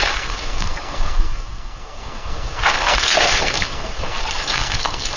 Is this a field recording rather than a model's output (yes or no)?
no